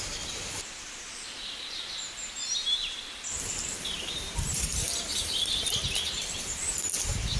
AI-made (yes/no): yes